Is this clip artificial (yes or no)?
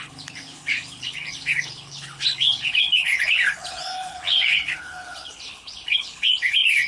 yes